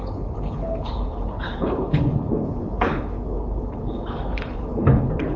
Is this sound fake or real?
fake